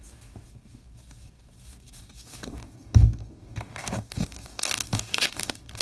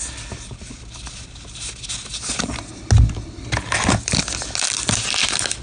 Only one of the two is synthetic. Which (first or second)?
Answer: first